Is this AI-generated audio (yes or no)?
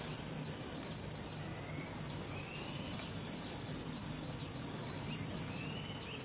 no